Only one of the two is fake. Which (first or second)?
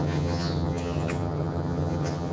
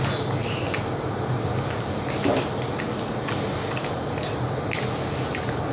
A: first